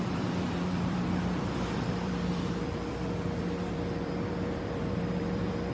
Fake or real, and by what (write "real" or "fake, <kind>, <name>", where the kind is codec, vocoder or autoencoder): fake, vocoder, BigVGAN v2